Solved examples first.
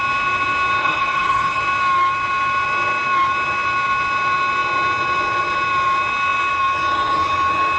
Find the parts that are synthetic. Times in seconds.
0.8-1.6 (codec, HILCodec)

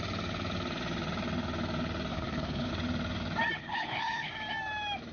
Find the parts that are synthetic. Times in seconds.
2.1-2.7 (codec, HILCodec); 3.6-4.3

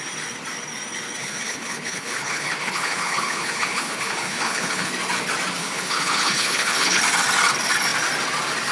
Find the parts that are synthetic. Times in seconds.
1.2-4.9 (codec, HILCodec); 5.6-7.0

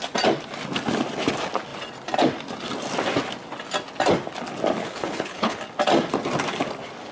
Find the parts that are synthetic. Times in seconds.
4.8-5.6 (codec, HILCodec)

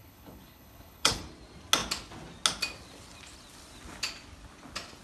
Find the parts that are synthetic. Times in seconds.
0.0-1.2 (codec, HILCodec)

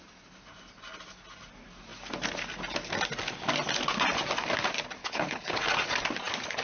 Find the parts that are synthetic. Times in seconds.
5.0-5.6 (codec, HILCodec)